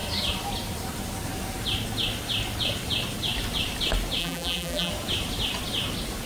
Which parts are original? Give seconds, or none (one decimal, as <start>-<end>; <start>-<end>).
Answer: 0.0-4.2; 4.9-6.3